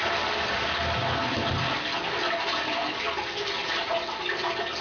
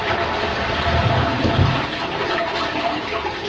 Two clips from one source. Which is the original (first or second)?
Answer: first